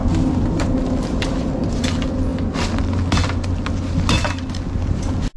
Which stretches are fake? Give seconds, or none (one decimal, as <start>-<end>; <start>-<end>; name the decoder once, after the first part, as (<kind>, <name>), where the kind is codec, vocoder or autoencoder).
0.0-1.8 (vocoder, BigVGAN v2)